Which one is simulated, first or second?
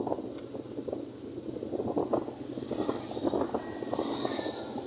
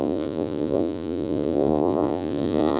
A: second